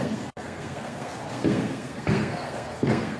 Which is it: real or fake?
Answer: fake